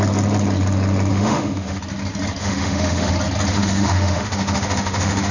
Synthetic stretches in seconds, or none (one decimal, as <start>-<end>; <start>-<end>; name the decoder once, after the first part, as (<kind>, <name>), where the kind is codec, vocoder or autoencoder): 1.1-1.8 (autoencoder, DAC-VAE); 2.4-3.1; 3.5-5.3